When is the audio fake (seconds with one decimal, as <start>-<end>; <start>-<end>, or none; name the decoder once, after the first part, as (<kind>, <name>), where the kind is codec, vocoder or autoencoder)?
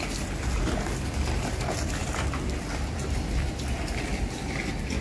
none